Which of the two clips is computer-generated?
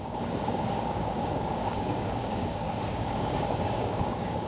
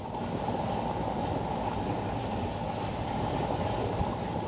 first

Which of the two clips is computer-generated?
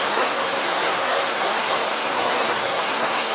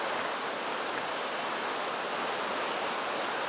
first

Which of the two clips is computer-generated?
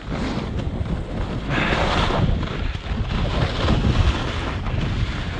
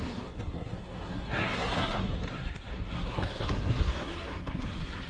second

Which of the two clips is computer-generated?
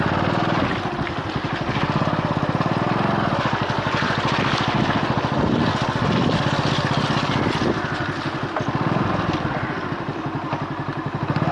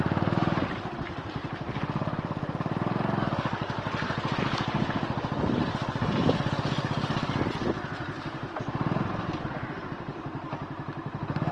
second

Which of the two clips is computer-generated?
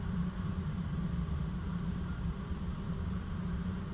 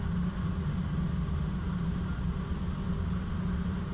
first